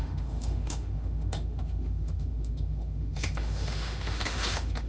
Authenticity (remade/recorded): remade